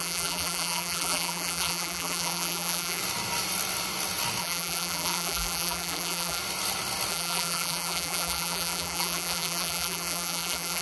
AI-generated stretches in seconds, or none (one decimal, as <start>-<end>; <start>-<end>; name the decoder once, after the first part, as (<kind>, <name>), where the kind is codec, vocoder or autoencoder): 0.0-3.0 (vocoder, BigVGAN v2); 4.4-6.4; 7.1-10.8